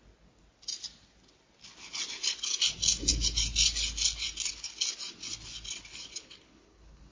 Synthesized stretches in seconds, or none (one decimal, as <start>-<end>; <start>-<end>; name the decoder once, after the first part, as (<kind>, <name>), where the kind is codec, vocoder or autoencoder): 5.9-7.1 (codec, HILCodec)